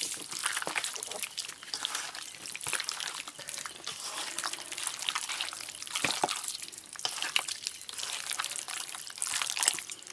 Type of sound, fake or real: fake